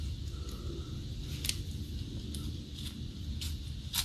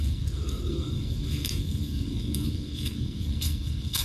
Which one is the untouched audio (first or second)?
first